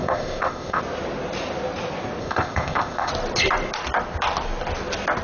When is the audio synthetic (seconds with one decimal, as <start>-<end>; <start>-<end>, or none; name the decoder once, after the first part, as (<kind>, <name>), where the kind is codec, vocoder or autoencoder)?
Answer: 0.0-0.8 (codec, ZipCodec); 2.2-3.1